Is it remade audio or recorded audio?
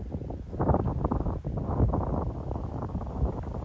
recorded